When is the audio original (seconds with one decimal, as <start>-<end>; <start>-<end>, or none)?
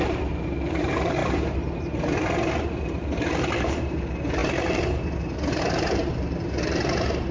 1.2-2.6